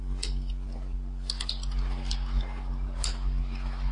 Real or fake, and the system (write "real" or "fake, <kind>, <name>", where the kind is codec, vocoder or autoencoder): real